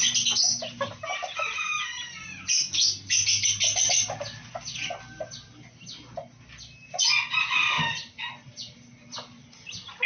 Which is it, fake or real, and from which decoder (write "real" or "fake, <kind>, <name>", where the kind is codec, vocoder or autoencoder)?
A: real